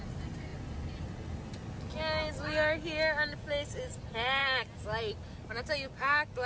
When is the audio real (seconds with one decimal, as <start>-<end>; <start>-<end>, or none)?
0.0-6.5